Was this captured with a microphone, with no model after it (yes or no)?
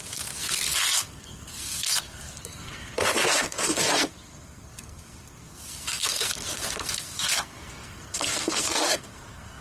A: no